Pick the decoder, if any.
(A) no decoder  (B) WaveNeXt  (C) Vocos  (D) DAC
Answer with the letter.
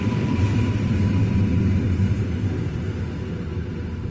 A